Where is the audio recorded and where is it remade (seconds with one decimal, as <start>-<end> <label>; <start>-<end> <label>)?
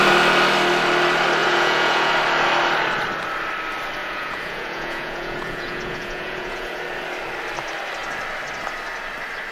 0.0-1.4 recorded; 1.4-2.1 remade; 2.1-4.0 recorded; 4.0-6.8 remade; 6.8-9.5 recorded